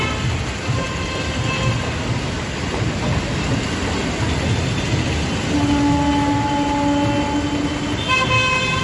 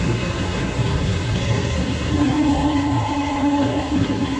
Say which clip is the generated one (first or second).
second